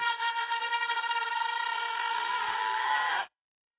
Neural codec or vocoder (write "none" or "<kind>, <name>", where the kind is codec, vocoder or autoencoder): codec, SNAC